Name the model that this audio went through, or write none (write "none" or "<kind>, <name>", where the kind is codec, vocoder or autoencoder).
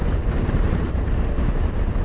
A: vocoder, BigVGAN v2